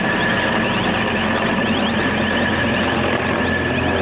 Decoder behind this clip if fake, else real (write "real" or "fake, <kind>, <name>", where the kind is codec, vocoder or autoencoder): real